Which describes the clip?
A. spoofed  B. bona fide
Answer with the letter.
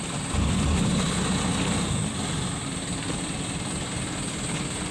B